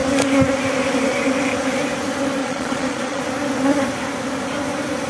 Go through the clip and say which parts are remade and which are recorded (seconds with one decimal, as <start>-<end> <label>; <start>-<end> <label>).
0.0-2.4 recorded; 2.4-3.2 remade; 3.2-5.1 recorded